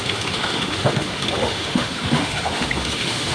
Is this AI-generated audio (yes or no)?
yes